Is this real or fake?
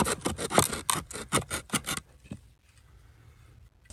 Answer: real